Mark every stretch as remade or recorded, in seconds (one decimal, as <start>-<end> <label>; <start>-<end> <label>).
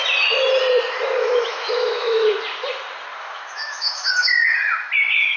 0.0-1.2 recorded; 1.2-2.4 remade; 2.4-3.2 recorded; 3.2-4.1 remade; 4.1-5.4 recorded